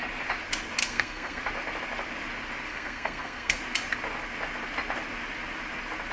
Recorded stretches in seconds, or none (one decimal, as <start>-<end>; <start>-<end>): 0.0-0.8; 1.4-2.7; 3.6-6.1